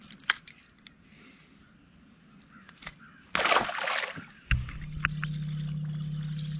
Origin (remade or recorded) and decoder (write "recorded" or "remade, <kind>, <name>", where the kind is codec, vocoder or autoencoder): recorded